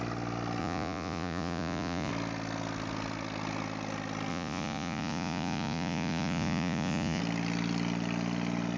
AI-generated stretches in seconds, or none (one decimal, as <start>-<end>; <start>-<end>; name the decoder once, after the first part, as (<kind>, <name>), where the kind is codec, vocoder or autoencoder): 0.6-2.1 (vocoder, Vocos); 4.3-7.2